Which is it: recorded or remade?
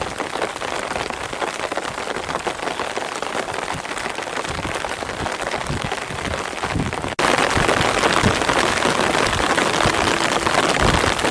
recorded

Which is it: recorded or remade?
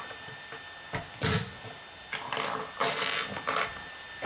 recorded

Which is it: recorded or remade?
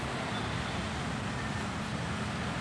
recorded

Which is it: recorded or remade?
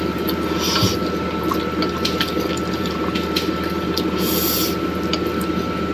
remade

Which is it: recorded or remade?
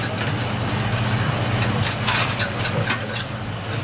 recorded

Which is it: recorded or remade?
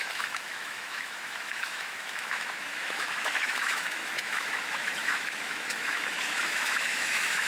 remade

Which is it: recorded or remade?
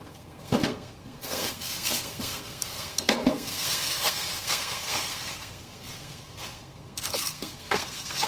remade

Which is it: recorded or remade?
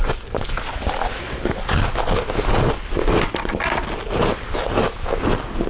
recorded